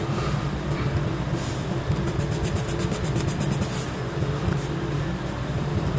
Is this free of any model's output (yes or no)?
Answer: no